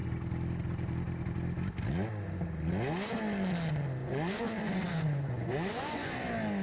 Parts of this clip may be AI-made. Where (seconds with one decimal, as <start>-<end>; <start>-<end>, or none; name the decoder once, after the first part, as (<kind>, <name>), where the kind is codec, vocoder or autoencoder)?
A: 4.0-6.1 (vocoder, Vocos)